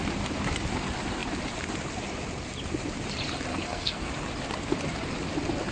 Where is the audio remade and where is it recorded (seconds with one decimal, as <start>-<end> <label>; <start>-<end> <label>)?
0.0-3.5 recorded; 3.5-4.1 remade; 4.1-5.7 recorded